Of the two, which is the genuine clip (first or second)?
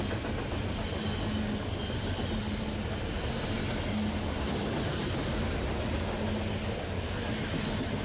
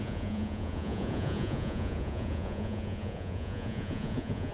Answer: first